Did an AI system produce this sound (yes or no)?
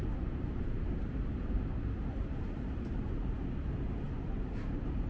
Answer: yes